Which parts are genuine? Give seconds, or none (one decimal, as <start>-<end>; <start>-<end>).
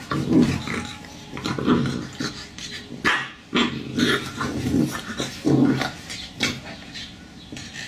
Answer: 0.0-7.9